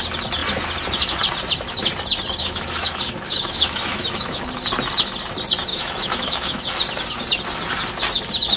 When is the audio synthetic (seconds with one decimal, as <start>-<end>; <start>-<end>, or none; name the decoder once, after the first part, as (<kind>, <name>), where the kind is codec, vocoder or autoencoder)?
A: 2.4-4.4 (autoencoder, DAC-VAE); 5.7-6.6